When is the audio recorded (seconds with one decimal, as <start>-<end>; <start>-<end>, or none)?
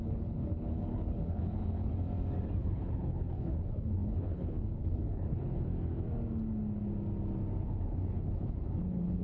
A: 1.9-2.6; 5.7-7.6